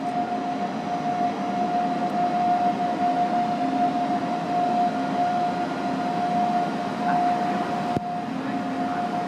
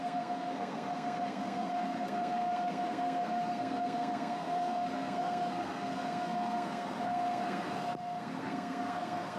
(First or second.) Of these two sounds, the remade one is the second